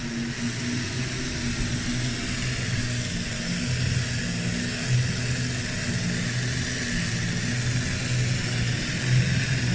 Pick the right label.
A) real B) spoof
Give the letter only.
A